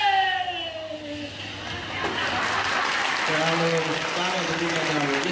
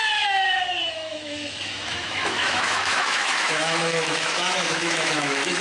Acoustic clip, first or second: first